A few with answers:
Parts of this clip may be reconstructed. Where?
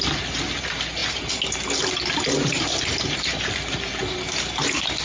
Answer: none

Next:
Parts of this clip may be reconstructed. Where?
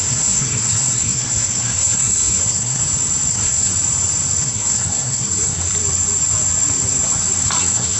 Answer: 0.0-2.8 (codec, SNAC); 3.3-3.7; 4.4-5.7; 7.6-8.0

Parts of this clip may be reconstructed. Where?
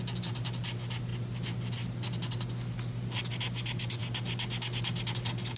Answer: none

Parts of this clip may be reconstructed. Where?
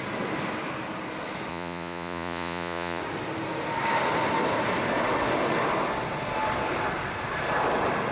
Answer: 1.5-3.0 (vocoder, Vocos)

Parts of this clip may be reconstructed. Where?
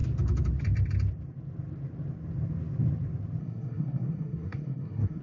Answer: 3.4-5.2 (codec, SNAC)